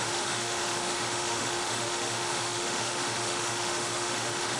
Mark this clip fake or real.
fake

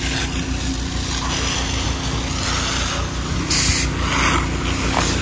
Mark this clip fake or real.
real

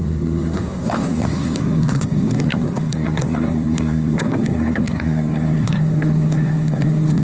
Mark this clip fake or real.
fake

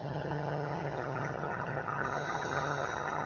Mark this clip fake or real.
fake